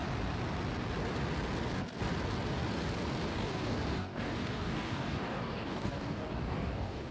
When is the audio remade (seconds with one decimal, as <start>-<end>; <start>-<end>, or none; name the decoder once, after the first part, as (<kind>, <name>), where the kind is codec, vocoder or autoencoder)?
3.3-7.1 (codec, DAC)